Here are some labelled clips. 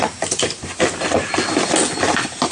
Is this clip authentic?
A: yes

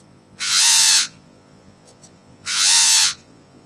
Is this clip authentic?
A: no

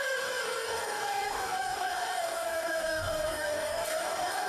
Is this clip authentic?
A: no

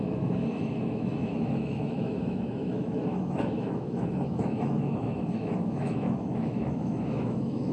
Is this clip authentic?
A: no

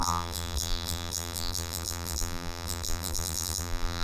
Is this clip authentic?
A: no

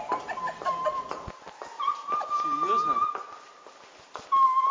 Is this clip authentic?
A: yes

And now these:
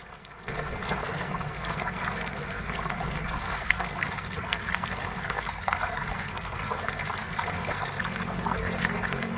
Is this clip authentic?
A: no